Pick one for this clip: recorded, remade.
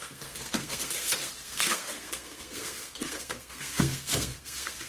remade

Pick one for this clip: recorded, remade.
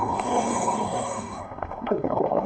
remade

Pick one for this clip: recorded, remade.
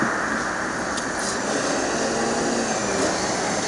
recorded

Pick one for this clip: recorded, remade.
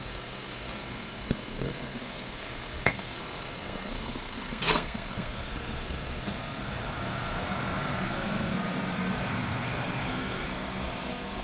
remade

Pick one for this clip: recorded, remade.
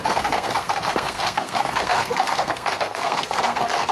remade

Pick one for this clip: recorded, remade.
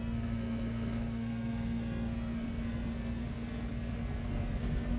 remade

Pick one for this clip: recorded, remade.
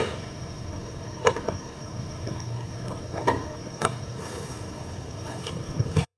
remade